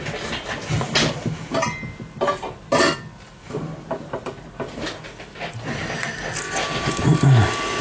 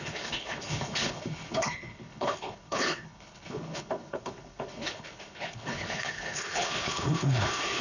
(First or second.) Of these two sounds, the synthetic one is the second